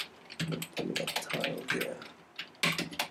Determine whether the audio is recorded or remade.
recorded